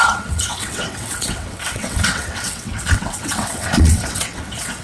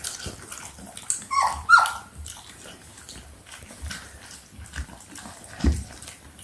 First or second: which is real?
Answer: second